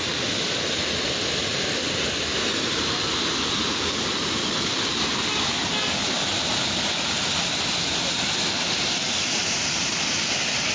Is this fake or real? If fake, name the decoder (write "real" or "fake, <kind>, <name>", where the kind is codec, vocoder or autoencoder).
real